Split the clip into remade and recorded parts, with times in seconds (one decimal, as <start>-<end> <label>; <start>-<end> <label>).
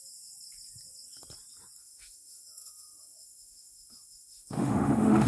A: 0.0-1.8 recorded; 1.8-5.3 remade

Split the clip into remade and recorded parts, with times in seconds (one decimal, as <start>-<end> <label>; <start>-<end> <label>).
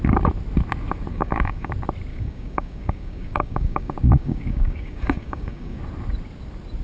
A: 0.0-1.1 recorded; 1.1-1.7 remade; 1.7-2.1 recorded; 2.1-5.8 remade; 5.8-6.8 recorded